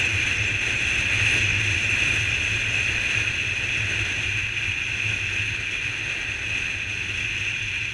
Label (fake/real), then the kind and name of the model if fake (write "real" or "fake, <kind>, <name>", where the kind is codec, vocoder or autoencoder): real